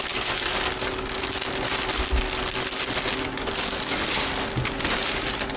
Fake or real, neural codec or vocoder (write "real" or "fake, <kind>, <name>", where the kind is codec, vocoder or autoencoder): real